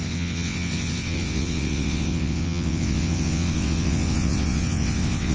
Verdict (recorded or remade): remade